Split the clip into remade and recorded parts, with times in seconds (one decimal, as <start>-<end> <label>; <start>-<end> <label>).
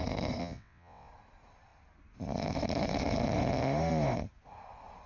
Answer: 0.0-0.4 recorded; 0.4-1.1 remade; 1.1-5.1 recorded